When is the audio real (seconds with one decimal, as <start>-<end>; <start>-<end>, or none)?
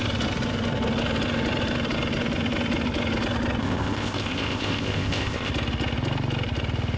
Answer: 0.0-3.6; 5.5-7.0